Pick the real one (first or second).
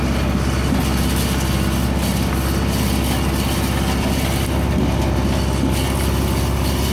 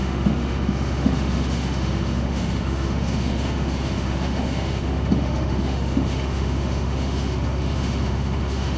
first